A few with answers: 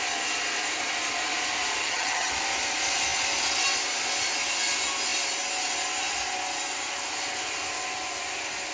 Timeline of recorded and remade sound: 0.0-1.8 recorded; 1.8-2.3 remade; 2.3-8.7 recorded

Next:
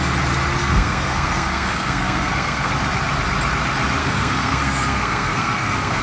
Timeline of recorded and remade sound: 0.0-0.6 recorded; 0.6-2.7 remade; 2.7-4.0 recorded; 4.0-6.0 remade

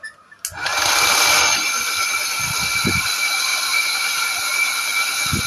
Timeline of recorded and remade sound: 0.0-3.5 recorded; 3.5-4.2 remade; 4.2-5.5 recorded

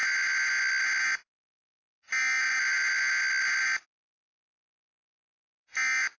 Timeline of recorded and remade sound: 0.0-6.2 recorded